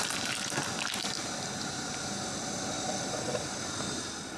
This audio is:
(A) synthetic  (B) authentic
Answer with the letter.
B